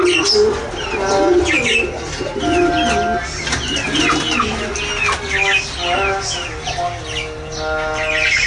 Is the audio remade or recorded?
recorded